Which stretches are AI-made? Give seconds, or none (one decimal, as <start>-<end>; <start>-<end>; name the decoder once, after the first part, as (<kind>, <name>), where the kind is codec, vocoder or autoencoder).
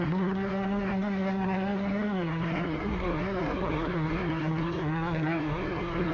0.0-6.1 (codec, SNAC)